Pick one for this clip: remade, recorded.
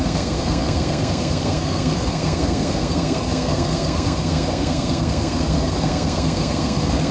remade